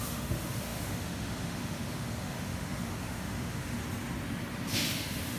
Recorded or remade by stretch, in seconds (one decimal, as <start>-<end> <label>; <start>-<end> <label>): 0.0-3.8 remade; 3.8-4.7 recorded; 4.7-5.4 remade